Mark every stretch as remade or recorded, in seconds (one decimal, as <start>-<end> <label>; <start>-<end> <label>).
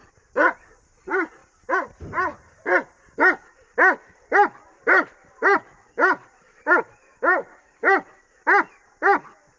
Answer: 0.0-0.7 remade; 0.7-1.4 recorded; 1.4-2.5 remade; 2.5-4.8 recorded; 4.8-6.6 remade; 6.6-9.6 recorded